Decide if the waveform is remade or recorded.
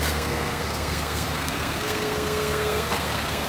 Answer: remade